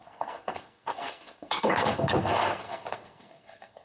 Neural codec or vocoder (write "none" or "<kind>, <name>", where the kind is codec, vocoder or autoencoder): codec, SNAC